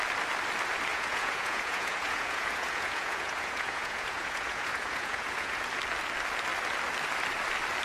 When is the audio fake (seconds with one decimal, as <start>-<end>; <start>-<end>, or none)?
0.9-5.6